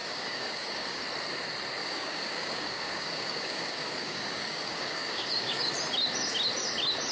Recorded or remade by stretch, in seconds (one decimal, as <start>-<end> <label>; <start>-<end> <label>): 0.0-1.0 remade; 1.0-1.8 recorded; 1.8-5.7 remade; 5.7-7.1 recorded